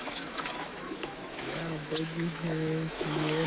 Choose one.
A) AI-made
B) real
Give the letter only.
A